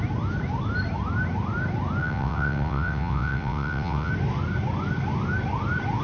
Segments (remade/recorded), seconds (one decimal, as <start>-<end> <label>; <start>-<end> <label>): 0.0-2.0 recorded; 2.0-4.1 remade; 4.1-6.0 recorded